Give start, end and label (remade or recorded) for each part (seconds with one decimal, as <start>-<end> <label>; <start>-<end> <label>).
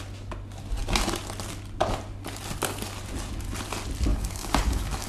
0.0-4.1 recorded; 4.1-5.1 remade